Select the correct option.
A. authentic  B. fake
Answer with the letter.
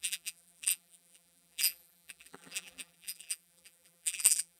B